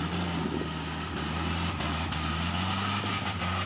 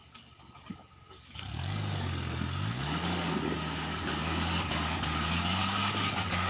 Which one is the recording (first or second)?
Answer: first